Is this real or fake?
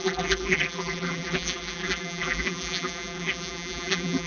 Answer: fake